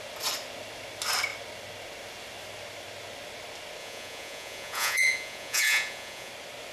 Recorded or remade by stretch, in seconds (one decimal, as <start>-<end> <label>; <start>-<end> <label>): 0.0-3.8 recorded; 3.8-6.3 remade; 6.3-6.7 recorded